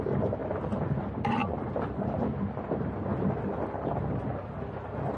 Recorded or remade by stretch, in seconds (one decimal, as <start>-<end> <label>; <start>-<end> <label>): 0.0-0.4 recorded; 0.4-1.0 remade; 1.0-5.2 recorded